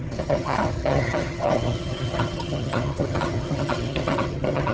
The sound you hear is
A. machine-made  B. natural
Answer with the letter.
A